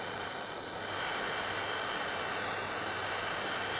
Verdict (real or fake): real